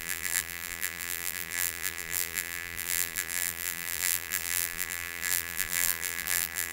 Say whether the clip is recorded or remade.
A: remade